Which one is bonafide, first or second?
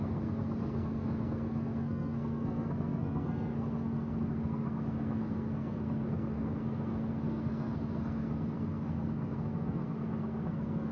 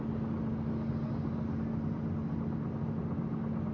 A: second